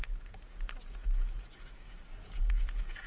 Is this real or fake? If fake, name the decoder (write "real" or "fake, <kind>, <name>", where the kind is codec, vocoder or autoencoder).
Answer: fake, vocoder, Vocos